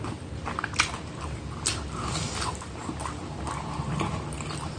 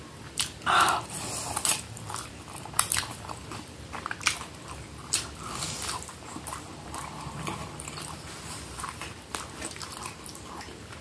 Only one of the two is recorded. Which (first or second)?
first